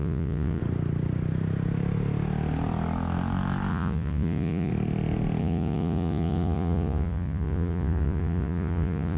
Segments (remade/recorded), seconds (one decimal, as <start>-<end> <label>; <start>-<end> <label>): 0.0-0.6 remade; 0.6-3.7 recorded; 3.7-4.7 remade; 4.7-5.4 recorded; 5.4-9.2 remade